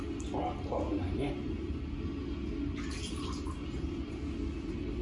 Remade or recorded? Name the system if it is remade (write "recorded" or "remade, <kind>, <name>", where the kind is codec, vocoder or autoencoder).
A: recorded